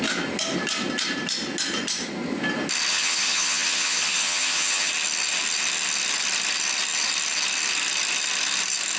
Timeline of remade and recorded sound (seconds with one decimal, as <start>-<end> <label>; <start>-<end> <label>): 0.0-2.9 recorded; 2.9-4.9 remade; 4.9-9.0 recorded